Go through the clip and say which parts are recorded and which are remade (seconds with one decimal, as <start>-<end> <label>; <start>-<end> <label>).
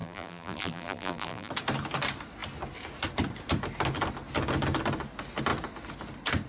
0.0-1.5 remade; 1.5-6.5 recorded